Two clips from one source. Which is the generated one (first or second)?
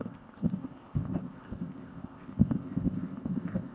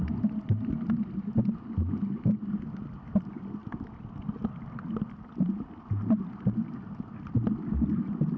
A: first